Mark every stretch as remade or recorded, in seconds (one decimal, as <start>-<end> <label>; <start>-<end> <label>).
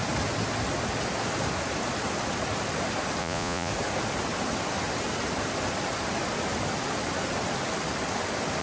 0.0-3.2 recorded; 3.2-3.7 remade; 3.7-8.6 recorded